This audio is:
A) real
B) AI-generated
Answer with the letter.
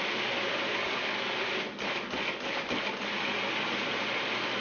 A